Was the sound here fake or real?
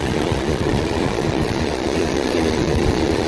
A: fake